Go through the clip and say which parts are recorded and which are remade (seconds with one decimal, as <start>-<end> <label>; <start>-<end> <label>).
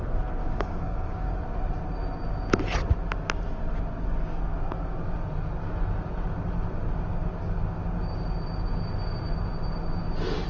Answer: 0.0-0.4 recorded; 0.4-1.4 remade; 1.4-10.5 recorded